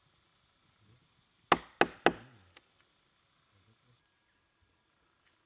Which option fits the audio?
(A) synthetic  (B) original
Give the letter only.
B